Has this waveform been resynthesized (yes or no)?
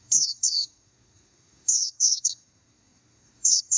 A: yes